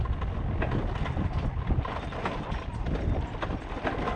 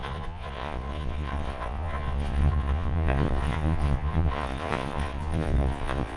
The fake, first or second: second